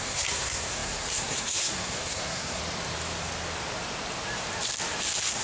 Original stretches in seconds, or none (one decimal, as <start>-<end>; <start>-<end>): 2.6-5.4